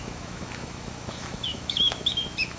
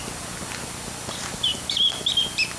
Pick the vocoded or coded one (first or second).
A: first